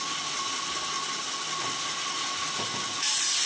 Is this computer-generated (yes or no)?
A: no